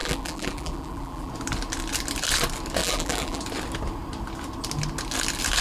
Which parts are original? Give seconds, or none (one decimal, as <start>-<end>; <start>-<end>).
1.3-2.8; 3.4-5.6